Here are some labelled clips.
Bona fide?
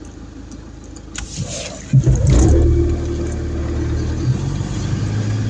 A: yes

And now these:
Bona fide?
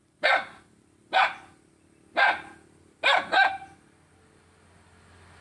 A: yes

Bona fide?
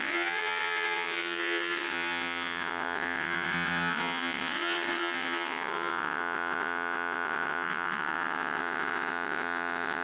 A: no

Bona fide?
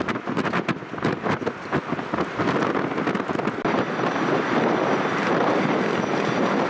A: yes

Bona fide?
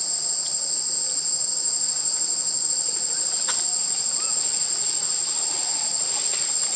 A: yes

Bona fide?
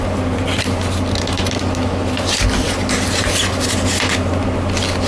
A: yes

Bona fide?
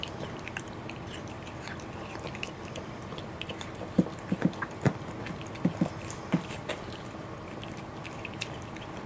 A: no